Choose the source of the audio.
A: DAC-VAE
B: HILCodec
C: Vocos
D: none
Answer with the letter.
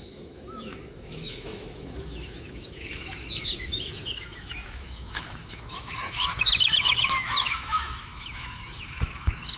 A